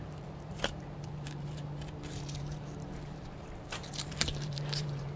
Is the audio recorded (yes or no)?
no